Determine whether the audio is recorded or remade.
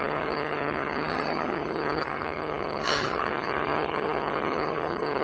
remade